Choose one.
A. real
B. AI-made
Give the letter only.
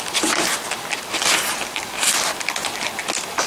A